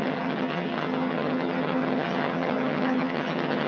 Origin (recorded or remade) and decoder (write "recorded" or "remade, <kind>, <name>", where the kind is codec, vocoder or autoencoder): remade, vocoder, HiFi-GAN